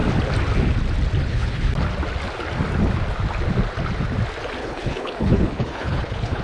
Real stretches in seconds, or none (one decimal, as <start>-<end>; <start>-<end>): 0.0-1.2; 1.7-4.6